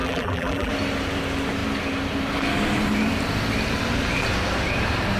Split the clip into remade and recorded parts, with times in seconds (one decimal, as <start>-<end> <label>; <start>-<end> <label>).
0.0-0.7 remade; 0.7-5.2 recorded

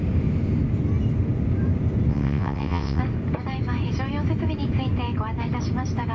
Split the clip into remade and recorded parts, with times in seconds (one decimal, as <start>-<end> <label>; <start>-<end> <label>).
0.0-2.1 recorded; 2.1-3.0 remade; 3.0-6.1 recorded

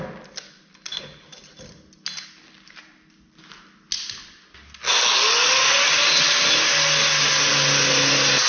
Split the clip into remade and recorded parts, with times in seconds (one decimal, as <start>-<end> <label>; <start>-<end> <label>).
0.0-8.5 recorded

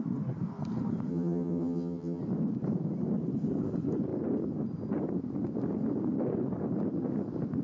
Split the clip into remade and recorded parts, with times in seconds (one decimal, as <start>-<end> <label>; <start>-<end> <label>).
0.0-1.1 recorded; 1.1-2.2 remade; 2.2-7.6 recorded

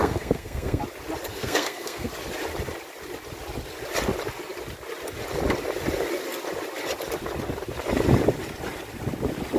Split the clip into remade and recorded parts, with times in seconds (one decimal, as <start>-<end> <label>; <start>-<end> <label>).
0.0-0.8 remade; 0.8-1.3 recorded; 1.3-2.1 remade; 2.1-9.6 recorded

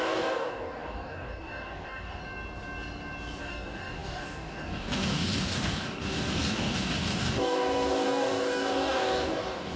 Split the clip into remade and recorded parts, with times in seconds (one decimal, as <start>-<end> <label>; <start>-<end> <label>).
0.0-2.2 remade; 2.2-3.4 recorded; 3.4-9.8 remade